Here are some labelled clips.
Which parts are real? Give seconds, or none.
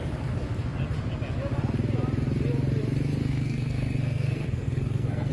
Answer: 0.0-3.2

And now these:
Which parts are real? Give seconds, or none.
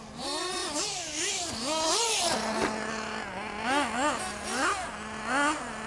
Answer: 0.0-5.9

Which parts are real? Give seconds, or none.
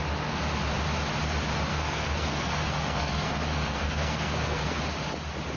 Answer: 0.0-1.7; 4.8-5.6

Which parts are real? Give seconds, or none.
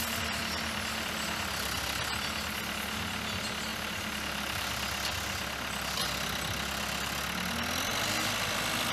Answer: 0.0-3.7; 4.7-8.9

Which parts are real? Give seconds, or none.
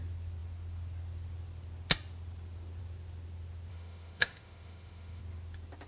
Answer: 0.0-3.7; 5.2-5.9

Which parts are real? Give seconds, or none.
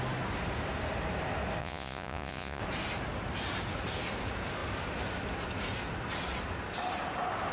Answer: 0.0-1.6; 2.6-7.5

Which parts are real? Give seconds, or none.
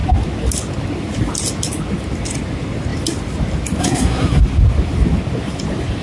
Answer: 0.0-3.8; 4.4-6.0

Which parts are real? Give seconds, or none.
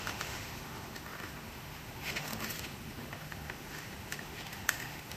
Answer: none